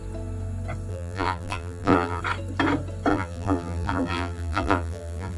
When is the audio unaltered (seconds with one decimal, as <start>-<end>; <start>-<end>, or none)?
0.0-0.9; 2.2-3.1